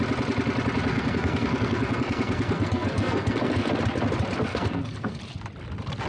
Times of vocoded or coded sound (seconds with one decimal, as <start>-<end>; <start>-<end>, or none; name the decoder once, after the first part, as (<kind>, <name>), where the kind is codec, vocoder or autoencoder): 0.9-3.7 (codec, SNAC); 4.5-5.2